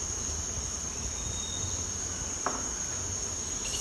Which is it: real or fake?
real